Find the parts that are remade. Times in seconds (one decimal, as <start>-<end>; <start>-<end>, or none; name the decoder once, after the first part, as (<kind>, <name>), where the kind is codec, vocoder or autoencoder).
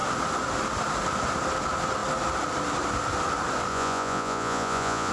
3.7-5.1 (vocoder, Vocos)